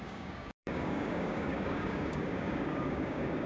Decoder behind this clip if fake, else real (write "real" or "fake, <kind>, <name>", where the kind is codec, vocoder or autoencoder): fake, codec, DAC